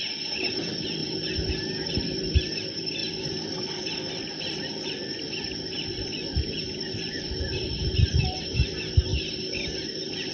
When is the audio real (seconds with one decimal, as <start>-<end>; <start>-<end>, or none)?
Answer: 1.0-1.9; 9.1-10.3